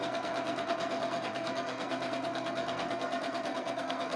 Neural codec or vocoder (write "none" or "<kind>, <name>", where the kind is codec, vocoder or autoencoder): codec, SNAC